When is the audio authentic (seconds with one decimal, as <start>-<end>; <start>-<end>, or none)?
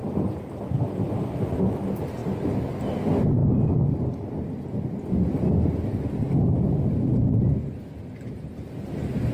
0.5-9.3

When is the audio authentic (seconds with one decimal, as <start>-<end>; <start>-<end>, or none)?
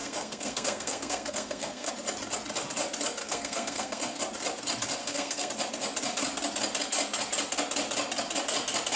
1.9-3.2; 4.2-5.0; 5.5-9.0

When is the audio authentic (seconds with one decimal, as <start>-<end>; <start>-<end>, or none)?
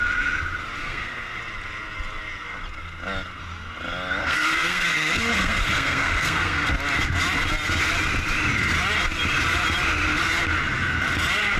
0.0-0.8; 1.4-4.2; 6.7-11.6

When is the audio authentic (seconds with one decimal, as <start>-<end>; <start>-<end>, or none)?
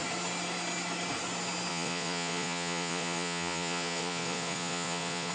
0.0-1.7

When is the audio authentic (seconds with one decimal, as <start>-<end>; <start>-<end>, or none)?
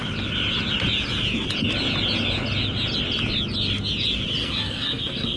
0.0-4.4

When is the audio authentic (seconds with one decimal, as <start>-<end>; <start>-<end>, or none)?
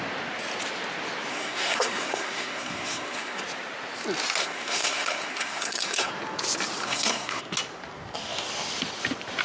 0.0-1.3; 3.4-4.4; 6.1-6.8; 7.4-9.4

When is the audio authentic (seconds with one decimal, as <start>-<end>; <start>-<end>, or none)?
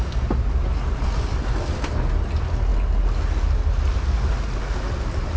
0.0-5.4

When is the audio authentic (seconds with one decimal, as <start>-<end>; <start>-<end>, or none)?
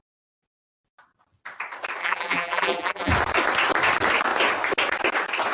0.0-2.0; 3.1-5.5